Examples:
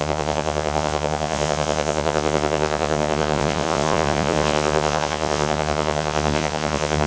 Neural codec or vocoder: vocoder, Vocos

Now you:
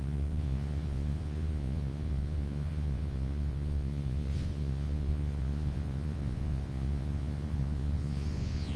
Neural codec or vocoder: vocoder, Vocos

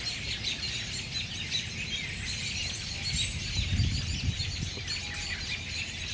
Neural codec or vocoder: none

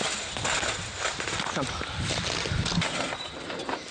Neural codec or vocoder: none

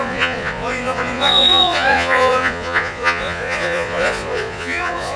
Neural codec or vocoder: vocoder, Vocos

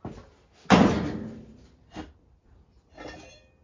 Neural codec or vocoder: none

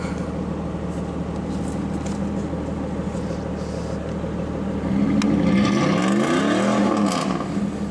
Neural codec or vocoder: none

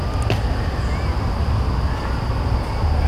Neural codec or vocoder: none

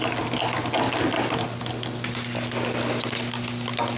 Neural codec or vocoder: none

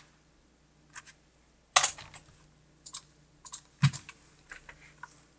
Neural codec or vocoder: none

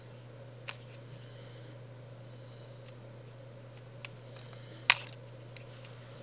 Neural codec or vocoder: none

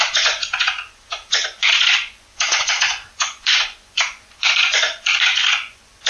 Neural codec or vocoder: vocoder, Vocos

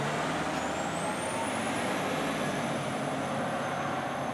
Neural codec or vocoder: none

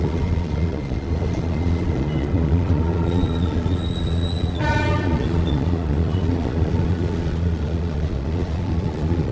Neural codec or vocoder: vocoder, Vocos